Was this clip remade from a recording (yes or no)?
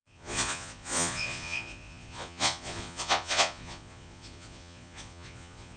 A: yes